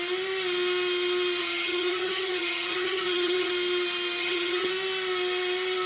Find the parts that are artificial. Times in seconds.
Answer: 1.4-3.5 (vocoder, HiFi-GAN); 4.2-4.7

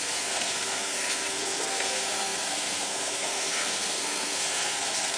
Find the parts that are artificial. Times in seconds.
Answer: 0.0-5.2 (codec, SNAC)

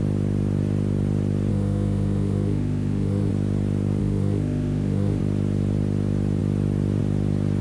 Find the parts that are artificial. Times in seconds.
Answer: 1.5-3.3 (autoencoder, DAC-VAE); 4.0-5.2